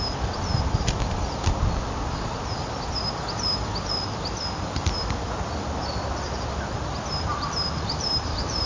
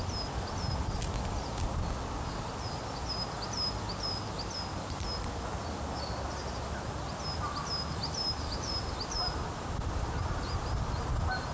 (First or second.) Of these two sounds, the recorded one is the second